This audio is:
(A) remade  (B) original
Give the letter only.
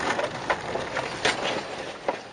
B